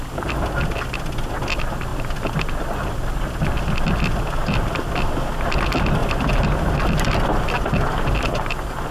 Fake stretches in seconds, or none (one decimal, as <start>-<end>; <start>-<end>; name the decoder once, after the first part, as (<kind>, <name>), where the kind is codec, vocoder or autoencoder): none